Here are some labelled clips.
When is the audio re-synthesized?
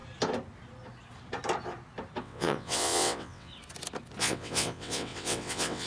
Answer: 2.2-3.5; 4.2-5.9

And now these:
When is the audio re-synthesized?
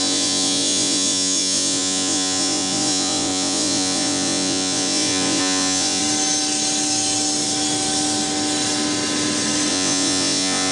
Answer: 0.0-6.0; 9.7-10.7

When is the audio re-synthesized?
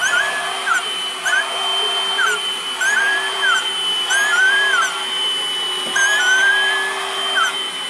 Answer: none